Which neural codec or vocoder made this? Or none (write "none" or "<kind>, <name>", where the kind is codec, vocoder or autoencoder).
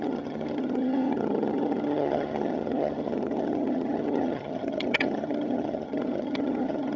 vocoder, HiFi-GAN